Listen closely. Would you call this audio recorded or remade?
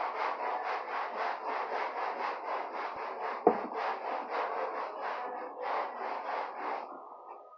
recorded